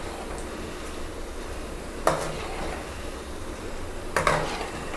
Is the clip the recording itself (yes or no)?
yes